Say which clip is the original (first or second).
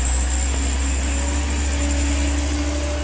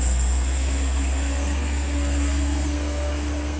first